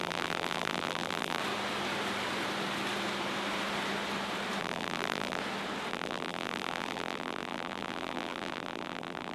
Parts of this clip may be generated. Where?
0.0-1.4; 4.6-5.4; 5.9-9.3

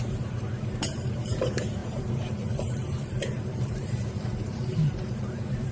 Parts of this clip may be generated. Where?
0.0-5.7

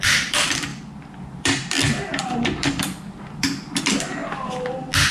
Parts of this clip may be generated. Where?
0.0-4.2

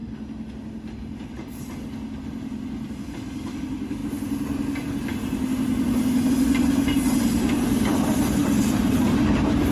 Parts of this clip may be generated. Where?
2.2-4.0; 6.3-9.7

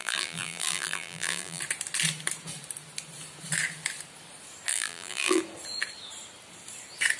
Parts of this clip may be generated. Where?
0.0-1.6; 4.7-5.4

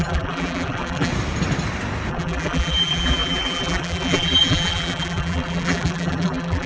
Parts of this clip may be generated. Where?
0.0-1.1; 2.1-6.7